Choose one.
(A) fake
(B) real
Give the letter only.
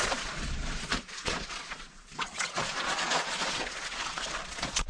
A